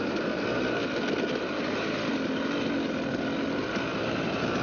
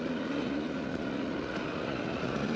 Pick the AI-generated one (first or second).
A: second